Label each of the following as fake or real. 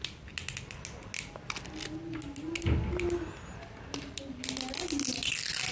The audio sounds real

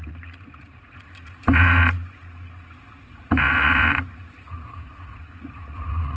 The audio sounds fake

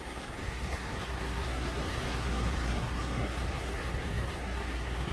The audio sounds fake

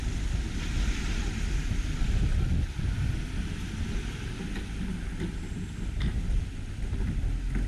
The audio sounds real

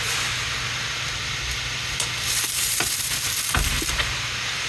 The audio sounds real